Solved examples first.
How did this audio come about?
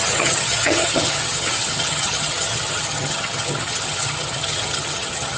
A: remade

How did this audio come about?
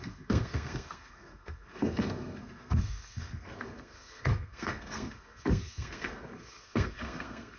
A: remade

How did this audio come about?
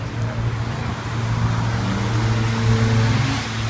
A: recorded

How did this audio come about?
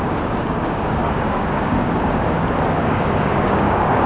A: remade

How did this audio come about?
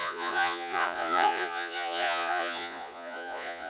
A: remade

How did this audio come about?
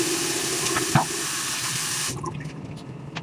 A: remade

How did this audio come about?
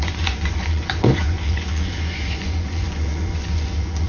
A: remade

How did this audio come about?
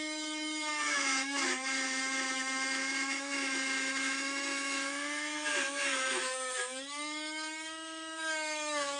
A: remade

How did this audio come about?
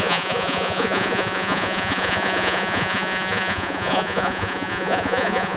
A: remade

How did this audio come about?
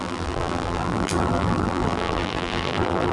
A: remade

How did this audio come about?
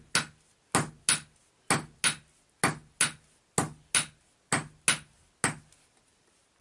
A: recorded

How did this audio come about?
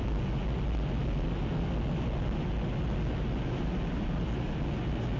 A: recorded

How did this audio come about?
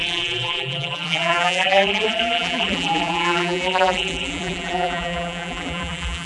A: remade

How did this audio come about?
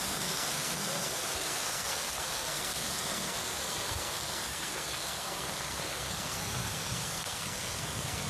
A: remade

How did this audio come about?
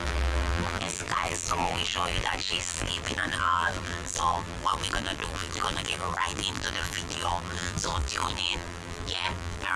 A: remade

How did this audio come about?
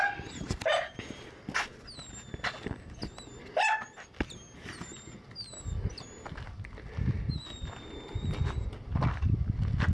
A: recorded